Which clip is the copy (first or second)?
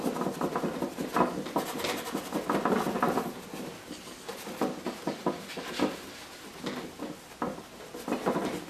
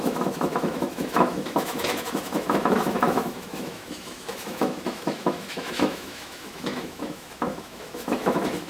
second